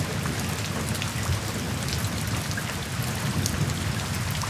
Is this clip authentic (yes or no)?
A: yes